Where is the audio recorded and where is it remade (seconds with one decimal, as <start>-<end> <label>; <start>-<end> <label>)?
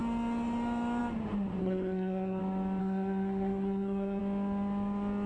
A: 0.0-1.6 recorded; 1.6-2.4 remade; 2.4-2.8 recorded; 2.8-4.2 remade; 4.2-5.3 recorded